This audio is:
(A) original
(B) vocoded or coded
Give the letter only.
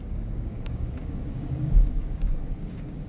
B